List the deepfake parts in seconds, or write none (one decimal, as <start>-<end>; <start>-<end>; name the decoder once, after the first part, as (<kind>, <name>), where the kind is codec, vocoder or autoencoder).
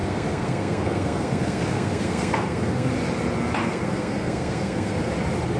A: 0.0-2.9 (codec, SNAC); 3.7-5.1